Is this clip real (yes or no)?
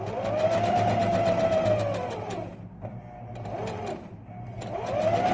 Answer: yes